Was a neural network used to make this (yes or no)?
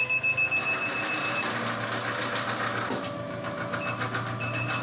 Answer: no